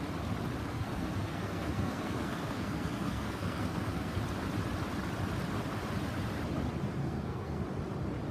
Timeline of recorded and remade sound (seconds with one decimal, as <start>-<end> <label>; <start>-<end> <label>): 0.0-0.6 recorded; 0.6-4.2 remade; 4.2-7.0 recorded; 7.0-7.6 remade; 7.6-8.3 recorded